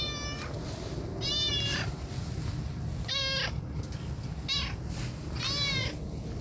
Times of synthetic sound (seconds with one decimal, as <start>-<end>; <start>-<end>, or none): 1.5-2.1